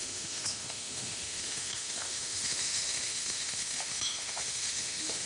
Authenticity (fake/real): fake